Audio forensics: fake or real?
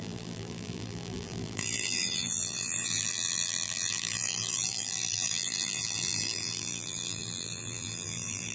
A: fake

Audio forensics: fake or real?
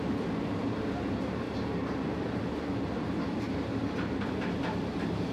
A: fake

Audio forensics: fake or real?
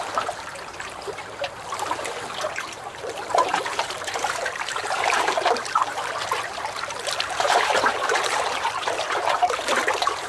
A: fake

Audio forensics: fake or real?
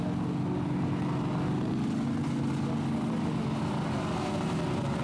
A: real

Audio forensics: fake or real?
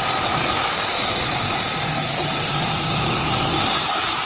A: real